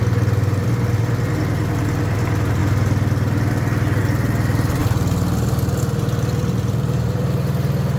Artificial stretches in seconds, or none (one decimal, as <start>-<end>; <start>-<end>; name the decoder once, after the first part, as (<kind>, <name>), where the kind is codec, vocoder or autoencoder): none